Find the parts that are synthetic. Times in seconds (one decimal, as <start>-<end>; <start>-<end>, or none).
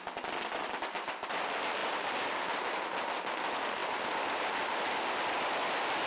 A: none